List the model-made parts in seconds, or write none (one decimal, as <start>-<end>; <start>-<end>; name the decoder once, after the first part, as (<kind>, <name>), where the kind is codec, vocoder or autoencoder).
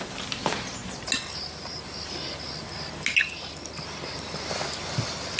none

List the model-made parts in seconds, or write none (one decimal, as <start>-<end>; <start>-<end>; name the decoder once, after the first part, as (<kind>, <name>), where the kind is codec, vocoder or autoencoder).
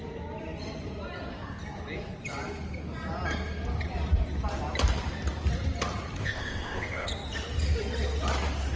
6.2-7.1 (codec, ZipCodec)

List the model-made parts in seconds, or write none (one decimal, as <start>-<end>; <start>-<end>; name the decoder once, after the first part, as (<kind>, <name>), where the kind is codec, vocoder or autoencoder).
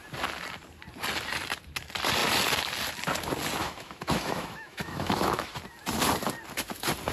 3.6-5.5 (autoencoder, DAC-VAE)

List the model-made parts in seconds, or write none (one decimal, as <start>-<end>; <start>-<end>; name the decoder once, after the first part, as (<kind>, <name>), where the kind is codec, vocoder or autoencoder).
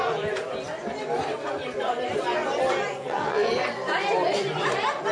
3.0-3.5 (vocoder, WaveNeXt)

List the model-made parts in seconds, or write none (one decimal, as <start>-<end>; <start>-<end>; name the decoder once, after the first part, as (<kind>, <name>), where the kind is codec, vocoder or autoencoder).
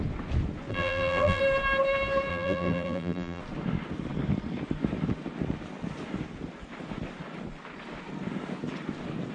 0.7-1.4 (vocoder, BigVGAN v2); 2.3-3.4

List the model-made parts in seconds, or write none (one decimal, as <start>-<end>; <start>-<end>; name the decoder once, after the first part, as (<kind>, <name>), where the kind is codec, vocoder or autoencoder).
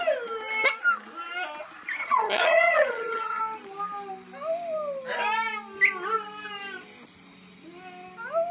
2.0-3.4 (vocoder, HiFi-GAN)